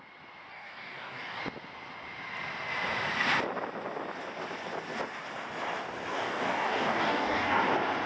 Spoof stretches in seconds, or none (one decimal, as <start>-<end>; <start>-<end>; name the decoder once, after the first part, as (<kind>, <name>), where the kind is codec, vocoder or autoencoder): 0.5-1.4 (codec, DAC); 6.1-7.6